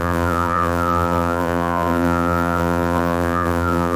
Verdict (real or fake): fake